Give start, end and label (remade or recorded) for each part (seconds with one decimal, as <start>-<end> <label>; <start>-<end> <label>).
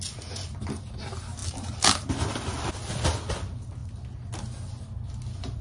0.0-5.6 recorded